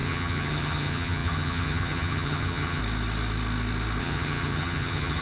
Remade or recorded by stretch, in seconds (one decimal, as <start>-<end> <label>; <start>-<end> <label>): 0.0-2.8 remade; 2.8-4.0 recorded; 4.0-5.2 remade